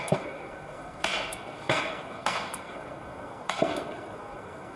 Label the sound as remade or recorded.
remade